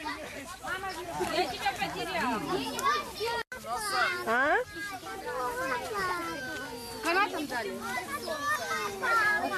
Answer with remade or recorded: recorded